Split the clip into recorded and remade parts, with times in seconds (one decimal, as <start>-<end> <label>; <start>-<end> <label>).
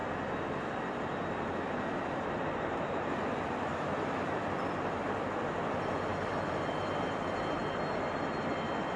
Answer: 0.0-1.3 recorded; 1.3-9.0 remade